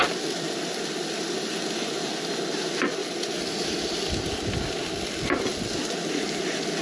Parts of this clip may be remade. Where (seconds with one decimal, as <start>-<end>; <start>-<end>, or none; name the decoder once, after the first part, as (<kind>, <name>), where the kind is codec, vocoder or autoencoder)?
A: 0.0-1.6 (vocoder, BigVGAN v2); 3.0-4.8; 5.5-6.8